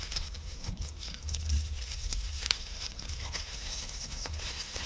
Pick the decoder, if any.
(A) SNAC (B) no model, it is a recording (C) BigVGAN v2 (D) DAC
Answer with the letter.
A